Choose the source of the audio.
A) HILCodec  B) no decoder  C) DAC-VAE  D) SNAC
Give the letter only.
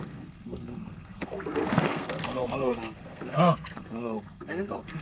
D